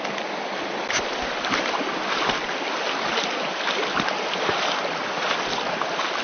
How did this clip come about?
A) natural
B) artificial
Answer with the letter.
A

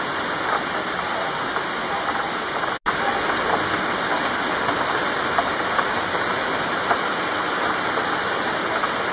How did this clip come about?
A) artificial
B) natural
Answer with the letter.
B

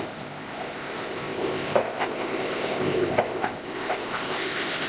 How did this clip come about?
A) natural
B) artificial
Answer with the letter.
B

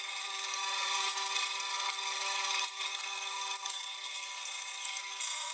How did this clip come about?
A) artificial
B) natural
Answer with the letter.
A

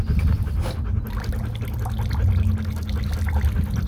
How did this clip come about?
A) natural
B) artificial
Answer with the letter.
A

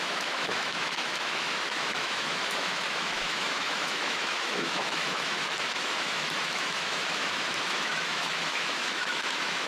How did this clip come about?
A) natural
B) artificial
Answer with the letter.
B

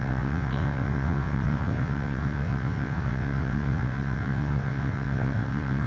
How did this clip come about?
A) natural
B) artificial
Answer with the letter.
B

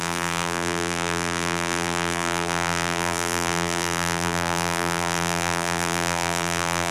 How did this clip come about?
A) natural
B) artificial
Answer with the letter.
B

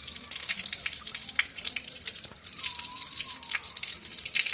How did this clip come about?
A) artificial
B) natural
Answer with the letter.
A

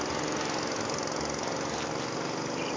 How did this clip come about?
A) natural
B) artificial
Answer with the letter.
A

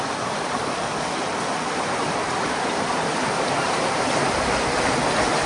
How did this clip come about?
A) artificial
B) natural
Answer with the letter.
B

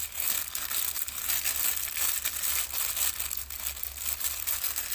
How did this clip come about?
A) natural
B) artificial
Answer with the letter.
A